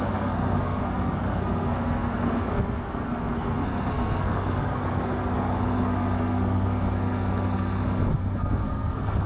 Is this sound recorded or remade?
remade